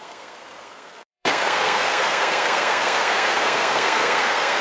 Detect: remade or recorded remade